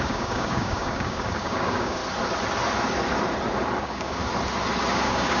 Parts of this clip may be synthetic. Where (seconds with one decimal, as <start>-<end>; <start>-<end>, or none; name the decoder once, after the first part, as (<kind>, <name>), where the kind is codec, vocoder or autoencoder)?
0.0-2.0 (codec, DAC); 3.8-4.2; 4.9-5.4